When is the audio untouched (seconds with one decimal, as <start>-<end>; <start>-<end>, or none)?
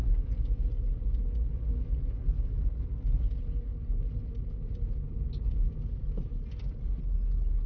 0.0-7.7